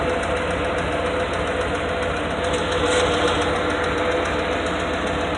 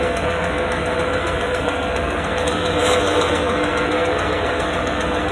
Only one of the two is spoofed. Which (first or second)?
second